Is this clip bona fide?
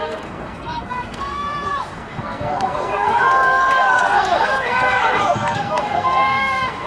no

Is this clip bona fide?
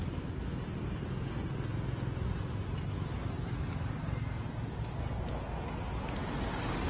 yes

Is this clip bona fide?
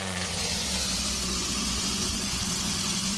no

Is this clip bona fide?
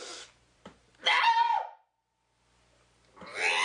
yes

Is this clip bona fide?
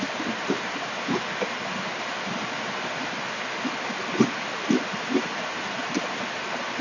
yes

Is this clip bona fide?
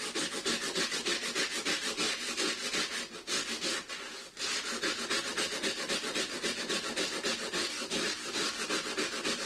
yes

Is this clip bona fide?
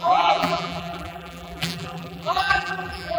no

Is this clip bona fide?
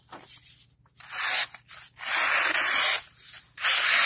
yes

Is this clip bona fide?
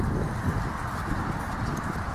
yes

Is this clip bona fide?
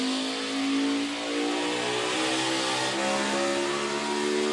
yes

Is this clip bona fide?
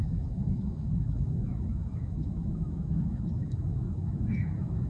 no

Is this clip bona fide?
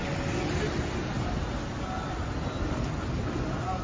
yes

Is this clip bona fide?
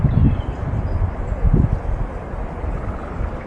yes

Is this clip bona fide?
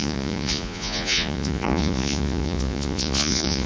no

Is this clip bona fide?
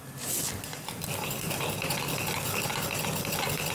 yes